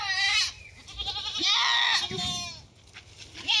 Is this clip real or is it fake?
real